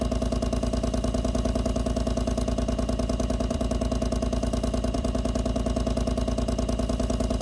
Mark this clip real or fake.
fake